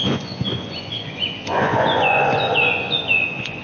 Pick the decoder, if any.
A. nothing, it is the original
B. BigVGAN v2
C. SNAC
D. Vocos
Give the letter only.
D